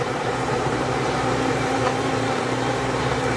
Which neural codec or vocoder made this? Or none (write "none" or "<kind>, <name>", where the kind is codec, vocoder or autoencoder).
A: vocoder, BigVGAN v2